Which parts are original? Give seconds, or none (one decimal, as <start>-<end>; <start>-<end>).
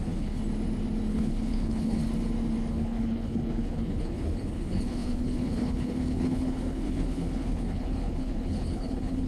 0.4-1.1; 2.0-2.7